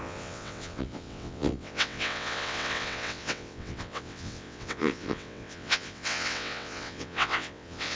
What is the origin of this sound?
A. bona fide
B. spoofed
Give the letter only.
B